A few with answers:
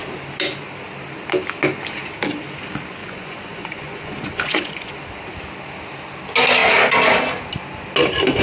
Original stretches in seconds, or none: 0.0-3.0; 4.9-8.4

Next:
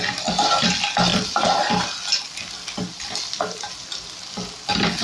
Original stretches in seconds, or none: 0.0-5.0

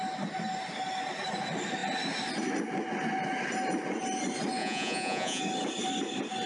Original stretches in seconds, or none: 0.0-4.6; 5.4-6.5

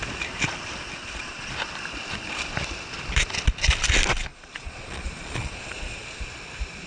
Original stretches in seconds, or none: 0.0-1.0; 1.5-4.3; 6.2-6.9

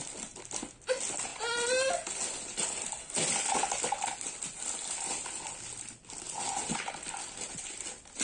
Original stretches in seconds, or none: 0.0-8.2

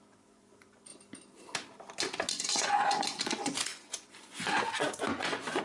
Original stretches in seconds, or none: 0.9-2.3